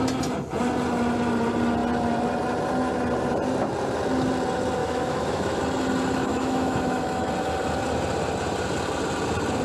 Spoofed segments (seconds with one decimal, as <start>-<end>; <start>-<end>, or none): 4.8-5.6; 6.3-7.3